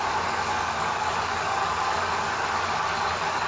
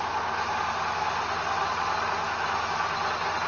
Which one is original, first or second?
second